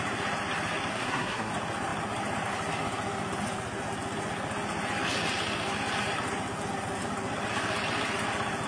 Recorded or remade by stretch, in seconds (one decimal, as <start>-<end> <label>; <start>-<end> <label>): 0.0-0.9 recorded; 0.9-1.5 remade; 1.5-8.7 recorded